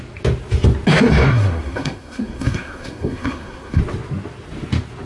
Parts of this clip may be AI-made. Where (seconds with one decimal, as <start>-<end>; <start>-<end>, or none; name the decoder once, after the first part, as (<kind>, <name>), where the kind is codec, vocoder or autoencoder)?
1.3-3.8 (codec, SNAC)